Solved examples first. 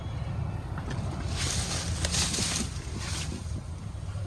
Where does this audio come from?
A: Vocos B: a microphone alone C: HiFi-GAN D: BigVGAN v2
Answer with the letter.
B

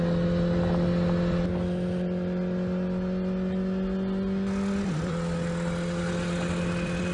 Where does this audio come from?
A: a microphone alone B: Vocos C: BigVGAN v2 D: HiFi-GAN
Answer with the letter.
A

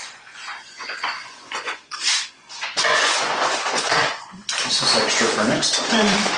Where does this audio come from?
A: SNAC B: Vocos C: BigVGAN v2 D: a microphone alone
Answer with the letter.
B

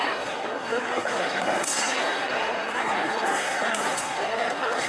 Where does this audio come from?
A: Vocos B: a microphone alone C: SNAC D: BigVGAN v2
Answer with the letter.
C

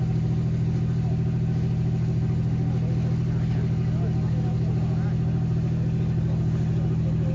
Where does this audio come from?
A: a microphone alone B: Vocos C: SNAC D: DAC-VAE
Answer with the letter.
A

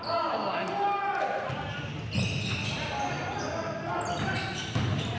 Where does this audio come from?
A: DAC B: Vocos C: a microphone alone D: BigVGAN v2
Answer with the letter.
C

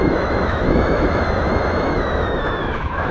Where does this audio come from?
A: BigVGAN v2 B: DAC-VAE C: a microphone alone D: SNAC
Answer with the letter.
B